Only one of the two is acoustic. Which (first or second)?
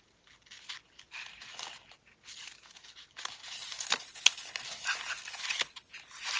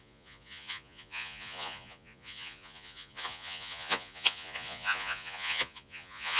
first